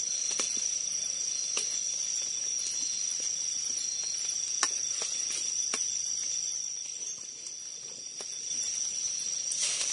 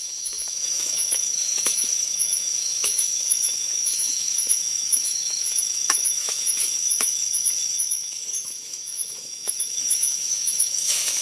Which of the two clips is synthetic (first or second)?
second